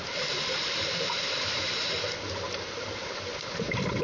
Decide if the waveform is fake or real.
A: fake